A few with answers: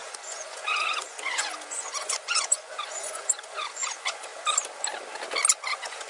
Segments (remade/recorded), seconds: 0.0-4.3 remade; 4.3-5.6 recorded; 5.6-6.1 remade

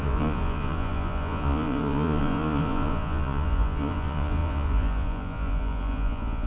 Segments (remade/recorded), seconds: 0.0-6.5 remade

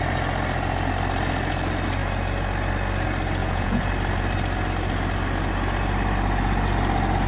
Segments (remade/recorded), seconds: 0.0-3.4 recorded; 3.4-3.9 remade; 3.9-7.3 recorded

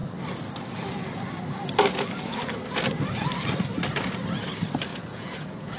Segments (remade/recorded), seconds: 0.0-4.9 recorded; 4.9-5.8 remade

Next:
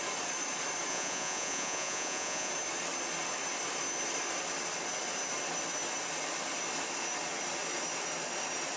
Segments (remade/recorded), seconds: 0.0-0.9 recorded; 0.9-2.5 remade; 2.5-8.8 recorded

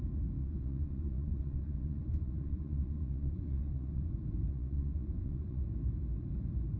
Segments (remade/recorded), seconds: 0.0-0.4 recorded; 0.4-4.1 remade; 4.1-4.5 recorded; 4.5-5.6 remade; 5.6-6.8 recorded

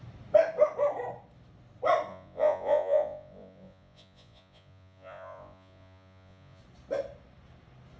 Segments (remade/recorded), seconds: 0.0-2.1 recorded; 2.1-6.6 remade; 6.6-8.0 recorded

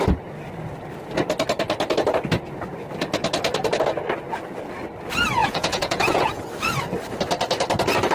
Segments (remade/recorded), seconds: 0.0-5.4 recorded; 5.4-6.4 remade; 6.4-8.1 recorded